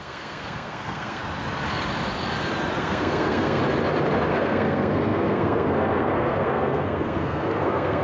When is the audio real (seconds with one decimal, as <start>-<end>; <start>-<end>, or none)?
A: 1.2-2.8; 3.6-4.3